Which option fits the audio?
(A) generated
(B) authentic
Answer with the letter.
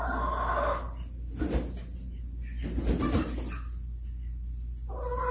B